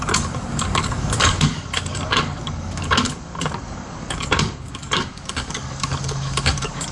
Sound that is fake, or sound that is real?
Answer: fake